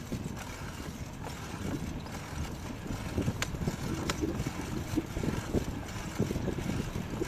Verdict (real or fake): real